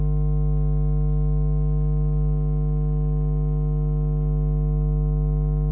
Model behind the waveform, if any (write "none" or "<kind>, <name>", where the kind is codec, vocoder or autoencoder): none